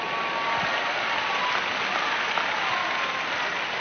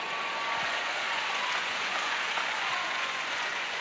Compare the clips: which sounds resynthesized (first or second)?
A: second